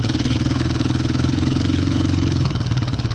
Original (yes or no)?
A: no